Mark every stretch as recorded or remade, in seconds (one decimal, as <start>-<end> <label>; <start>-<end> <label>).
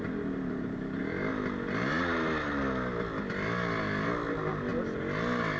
0.0-5.6 recorded